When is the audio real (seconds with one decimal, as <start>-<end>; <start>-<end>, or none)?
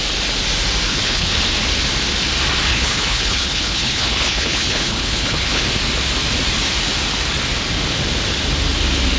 0.0-0.9; 1.4-2.7; 5.6-9.2